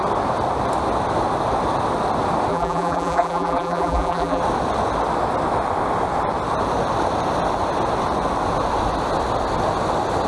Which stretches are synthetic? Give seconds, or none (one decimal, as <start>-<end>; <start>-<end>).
2.5-4.4

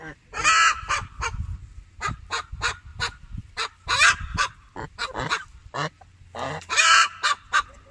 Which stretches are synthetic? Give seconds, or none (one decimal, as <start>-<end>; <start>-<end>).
3.4-6.1

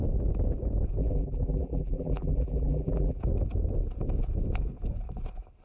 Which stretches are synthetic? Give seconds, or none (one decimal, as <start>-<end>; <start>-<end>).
1.0-3.2

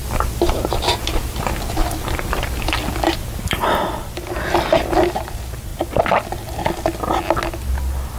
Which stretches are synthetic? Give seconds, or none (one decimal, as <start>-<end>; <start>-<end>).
0.0-4.9; 5.7-6.3